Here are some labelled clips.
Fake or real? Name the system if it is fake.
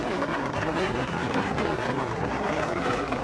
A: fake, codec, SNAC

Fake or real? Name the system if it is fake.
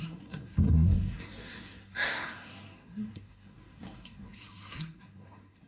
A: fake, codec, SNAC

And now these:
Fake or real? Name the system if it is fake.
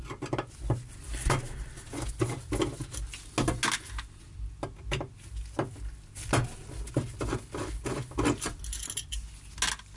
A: real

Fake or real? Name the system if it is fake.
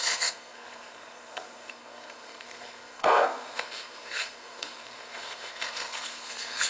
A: fake, codec, SNAC